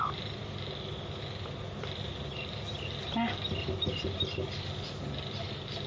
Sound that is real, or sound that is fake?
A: real